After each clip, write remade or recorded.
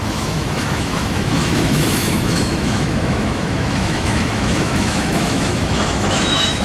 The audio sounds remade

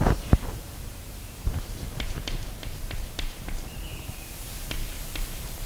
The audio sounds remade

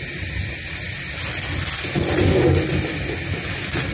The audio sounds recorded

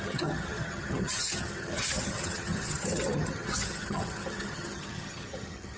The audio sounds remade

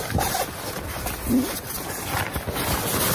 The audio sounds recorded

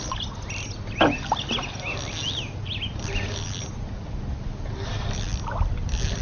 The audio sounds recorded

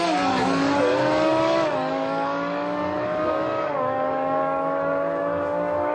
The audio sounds remade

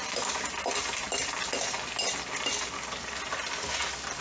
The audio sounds recorded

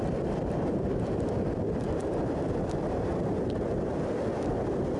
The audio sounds recorded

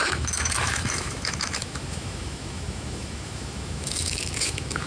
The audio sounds remade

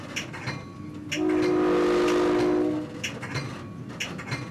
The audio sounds recorded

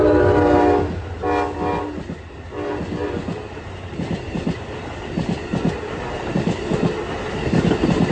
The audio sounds recorded